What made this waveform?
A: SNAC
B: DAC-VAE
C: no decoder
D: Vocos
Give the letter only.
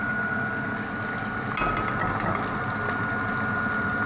C